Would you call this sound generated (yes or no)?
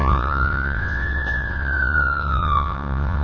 yes